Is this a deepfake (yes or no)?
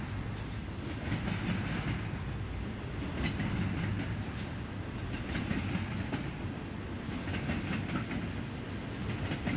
no